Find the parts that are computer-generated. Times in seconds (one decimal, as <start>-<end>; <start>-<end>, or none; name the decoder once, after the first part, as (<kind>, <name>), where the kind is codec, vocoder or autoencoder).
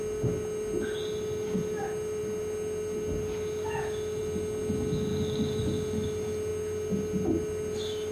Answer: none